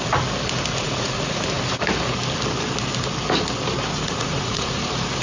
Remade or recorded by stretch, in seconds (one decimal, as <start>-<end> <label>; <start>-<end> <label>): 0.0-0.7 recorded; 0.7-1.4 remade; 1.4-3.9 recorded; 3.9-4.8 remade; 4.8-5.2 recorded